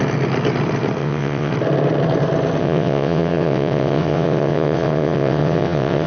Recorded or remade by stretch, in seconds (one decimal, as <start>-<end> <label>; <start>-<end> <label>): 0.0-1.0 recorded; 1.0-1.5 remade; 1.5-2.6 recorded; 2.6-6.1 remade